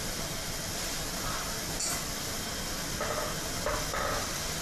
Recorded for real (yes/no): yes